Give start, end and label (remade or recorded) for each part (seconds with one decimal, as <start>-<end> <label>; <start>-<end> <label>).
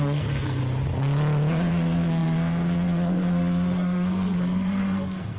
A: 0.0-0.6 remade; 0.6-1.7 recorded; 1.7-5.4 remade